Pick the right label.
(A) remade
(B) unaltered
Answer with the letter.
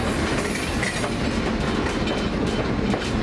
B